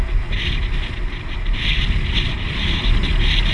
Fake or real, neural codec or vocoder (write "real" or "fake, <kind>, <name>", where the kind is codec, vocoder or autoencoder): real